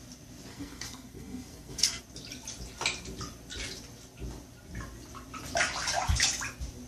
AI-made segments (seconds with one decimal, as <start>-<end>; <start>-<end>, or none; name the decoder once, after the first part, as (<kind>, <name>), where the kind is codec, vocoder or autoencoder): 0.5-2.0 (codec, SNAC)